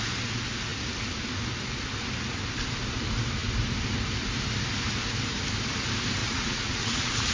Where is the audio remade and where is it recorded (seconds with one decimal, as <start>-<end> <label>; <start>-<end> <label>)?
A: 0.0-6.2 recorded; 6.2-7.3 remade